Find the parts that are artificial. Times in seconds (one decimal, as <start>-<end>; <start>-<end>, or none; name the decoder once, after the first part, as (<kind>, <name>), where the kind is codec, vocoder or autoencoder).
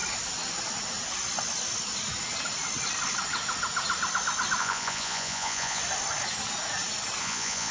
4.6-5.8 (vocoder, Vocos); 7.2-7.7